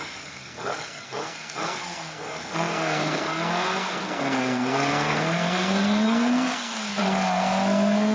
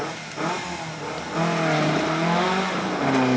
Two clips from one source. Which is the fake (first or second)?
first